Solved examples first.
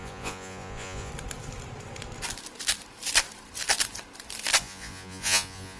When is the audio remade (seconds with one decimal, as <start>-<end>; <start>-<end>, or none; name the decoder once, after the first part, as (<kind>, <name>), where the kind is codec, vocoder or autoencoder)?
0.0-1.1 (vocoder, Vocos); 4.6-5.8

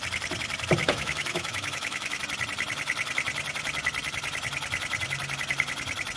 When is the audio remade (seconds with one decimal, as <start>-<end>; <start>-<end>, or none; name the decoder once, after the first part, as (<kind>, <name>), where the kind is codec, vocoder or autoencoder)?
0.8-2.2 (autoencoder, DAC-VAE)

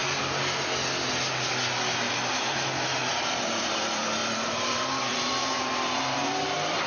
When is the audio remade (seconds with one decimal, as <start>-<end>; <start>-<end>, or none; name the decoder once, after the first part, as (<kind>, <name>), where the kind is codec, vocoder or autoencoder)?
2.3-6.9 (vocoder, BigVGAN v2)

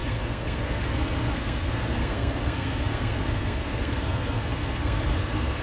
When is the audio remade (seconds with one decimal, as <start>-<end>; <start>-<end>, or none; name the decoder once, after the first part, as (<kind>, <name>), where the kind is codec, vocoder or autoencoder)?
0.0-5.6 (codec, SNAC)

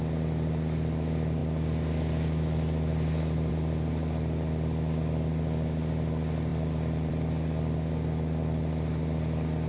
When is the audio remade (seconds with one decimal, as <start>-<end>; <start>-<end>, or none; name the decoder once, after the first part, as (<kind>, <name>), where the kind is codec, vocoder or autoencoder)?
6.5-7.1 (vocoder, BigVGAN v2)